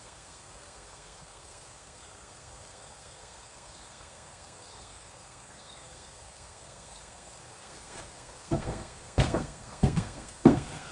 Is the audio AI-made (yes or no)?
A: yes